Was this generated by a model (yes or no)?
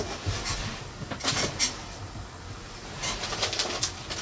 no